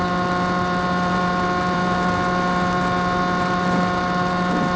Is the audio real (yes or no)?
no